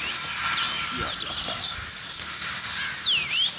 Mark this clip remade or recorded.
recorded